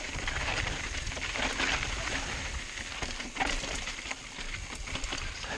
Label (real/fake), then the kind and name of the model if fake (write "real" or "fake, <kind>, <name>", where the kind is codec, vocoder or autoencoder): real